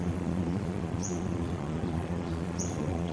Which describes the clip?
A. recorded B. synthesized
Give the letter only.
B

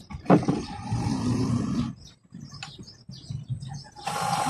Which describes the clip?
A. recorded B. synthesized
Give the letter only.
A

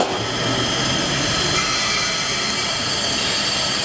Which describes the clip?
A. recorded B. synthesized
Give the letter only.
A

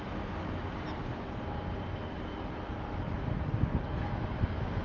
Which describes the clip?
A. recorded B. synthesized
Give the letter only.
A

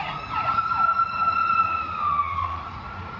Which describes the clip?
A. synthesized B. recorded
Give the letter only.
A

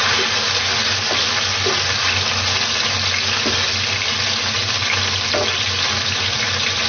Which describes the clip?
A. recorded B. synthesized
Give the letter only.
A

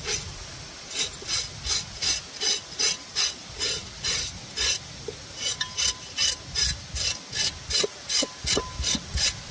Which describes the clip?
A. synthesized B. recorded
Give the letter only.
B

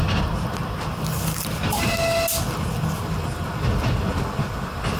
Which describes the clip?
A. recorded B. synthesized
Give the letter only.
A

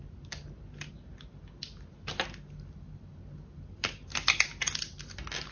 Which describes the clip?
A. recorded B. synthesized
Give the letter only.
A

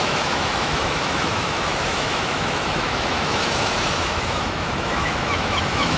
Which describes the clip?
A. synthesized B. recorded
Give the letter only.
A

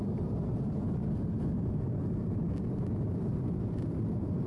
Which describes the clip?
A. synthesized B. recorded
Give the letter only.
A